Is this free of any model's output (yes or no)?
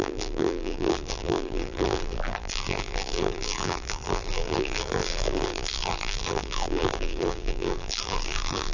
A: no